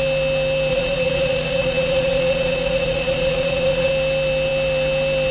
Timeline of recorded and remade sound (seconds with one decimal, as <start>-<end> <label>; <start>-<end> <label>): 0.0-0.7 recorded; 0.7-3.9 remade; 3.9-5.3 recorded